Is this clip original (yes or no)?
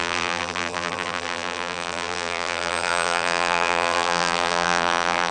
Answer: no